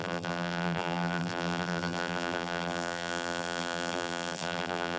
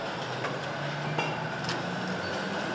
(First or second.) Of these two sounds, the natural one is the second